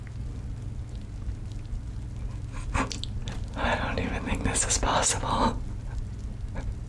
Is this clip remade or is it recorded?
recorded